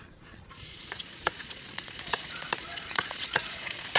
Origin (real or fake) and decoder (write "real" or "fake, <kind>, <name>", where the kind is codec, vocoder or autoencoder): fake, vocoder, Vocos